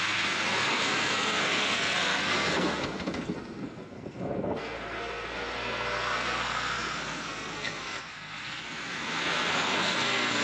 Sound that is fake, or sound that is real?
fake